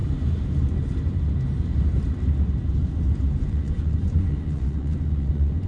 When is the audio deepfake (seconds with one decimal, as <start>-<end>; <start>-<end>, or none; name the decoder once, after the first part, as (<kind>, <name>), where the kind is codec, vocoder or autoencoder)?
3.4-5.7 (vocoder, Vocos)